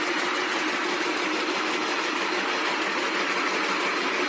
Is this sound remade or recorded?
recorded